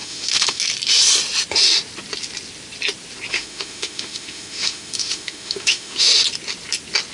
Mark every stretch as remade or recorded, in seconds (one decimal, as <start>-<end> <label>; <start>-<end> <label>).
0.0-0.6 remade; 0.6-3.3 recorded; 3.3-6.1 remade; 6.1-7.1 recorded